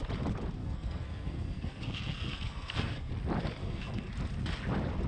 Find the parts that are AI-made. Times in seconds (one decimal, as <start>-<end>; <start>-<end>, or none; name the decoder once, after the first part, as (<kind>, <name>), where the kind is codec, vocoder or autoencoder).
0.6-3.1 (codec, SNAC); 3.6-4.1